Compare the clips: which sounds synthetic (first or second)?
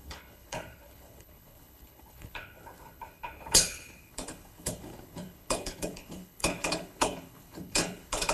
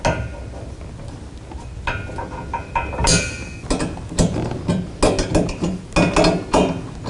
first